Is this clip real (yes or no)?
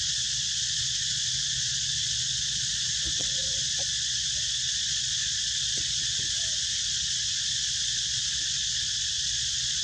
no